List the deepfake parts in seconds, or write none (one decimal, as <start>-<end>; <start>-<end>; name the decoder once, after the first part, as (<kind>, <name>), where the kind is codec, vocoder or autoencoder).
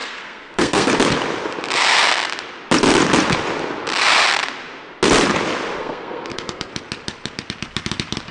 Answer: 0.0-0.9 (codec, SNAC); 5.8-6.7